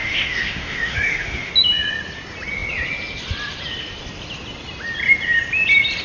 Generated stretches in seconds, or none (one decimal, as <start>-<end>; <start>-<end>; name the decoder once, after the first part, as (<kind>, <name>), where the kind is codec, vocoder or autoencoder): 0.0-1.5 (autoencoder, DAC-VAE)